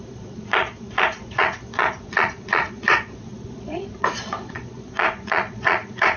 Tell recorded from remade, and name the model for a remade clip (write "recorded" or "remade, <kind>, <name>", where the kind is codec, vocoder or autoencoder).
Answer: remade, vocoder, Vocos